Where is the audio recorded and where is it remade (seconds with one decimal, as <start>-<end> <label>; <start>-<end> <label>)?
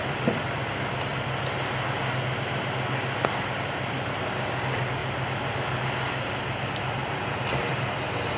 0.0-1.1 remade; 1.1-3.7 recorded; 3.7-5.0 remade; 5.0-6.9 recorded; 6.9-8.4 remade